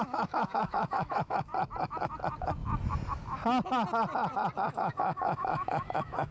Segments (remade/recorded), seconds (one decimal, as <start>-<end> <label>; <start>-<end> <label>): 0.0-1.5 remade; 1.5-4.7 recorded; 4.7-6.3 remade